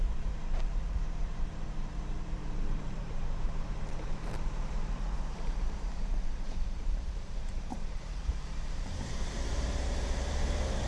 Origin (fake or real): fake